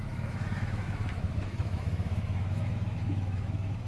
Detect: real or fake fake